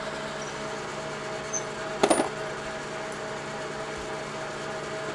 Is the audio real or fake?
real